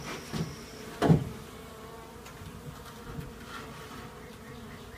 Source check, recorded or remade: recorded